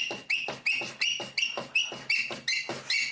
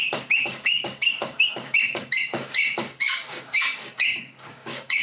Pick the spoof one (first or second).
second